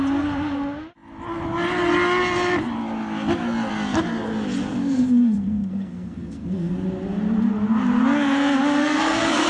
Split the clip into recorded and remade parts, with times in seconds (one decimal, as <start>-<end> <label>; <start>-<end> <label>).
0.0-4.7 recorded; 4.7-6.7 remade; 6.7-8.8 recorded; 8.8-9.5 remade